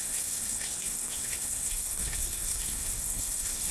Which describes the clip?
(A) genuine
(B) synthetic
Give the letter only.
B